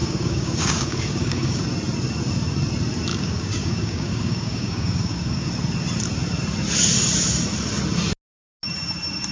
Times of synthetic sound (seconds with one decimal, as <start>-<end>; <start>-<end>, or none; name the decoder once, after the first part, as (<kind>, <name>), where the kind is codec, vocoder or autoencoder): 0.0-1.6 (codec, DAC); 3.1-5.5